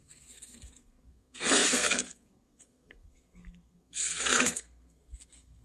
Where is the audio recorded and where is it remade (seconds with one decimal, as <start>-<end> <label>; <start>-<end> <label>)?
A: 0.0-5.6 remade